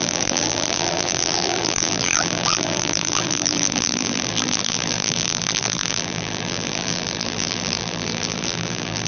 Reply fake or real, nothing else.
fake